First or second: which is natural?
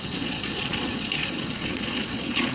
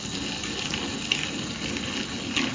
second